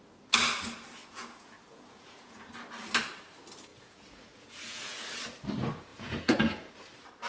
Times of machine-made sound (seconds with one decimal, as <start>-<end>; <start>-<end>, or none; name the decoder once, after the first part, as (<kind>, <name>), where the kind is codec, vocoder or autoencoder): 1.0-2.5 (vocoder, Vocos); 3.7-5.0; 5.9-6.7